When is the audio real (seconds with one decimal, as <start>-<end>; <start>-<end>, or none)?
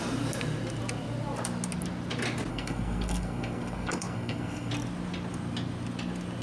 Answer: 0.0-2.5; 4.7-6.4